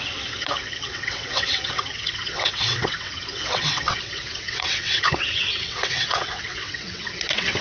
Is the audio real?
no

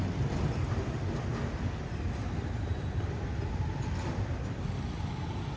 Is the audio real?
yes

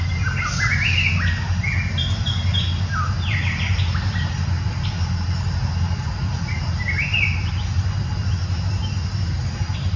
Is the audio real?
yes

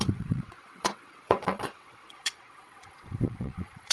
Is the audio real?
no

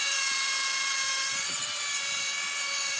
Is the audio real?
no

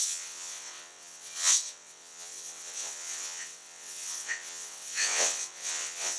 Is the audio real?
no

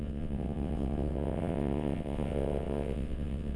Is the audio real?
no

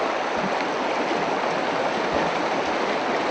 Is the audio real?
yes